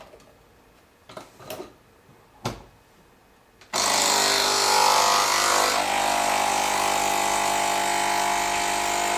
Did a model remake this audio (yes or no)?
no